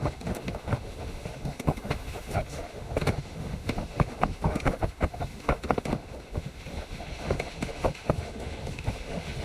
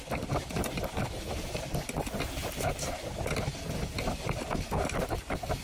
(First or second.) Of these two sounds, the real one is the second